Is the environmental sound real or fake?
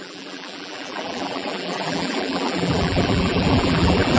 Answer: fake